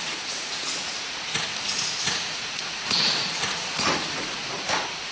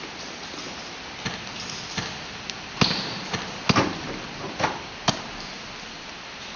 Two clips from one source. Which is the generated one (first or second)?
first